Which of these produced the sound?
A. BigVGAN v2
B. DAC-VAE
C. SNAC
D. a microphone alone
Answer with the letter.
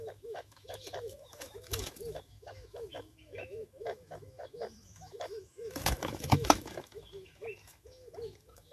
B